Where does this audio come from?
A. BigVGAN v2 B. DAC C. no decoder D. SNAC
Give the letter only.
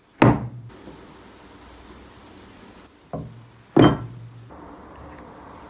C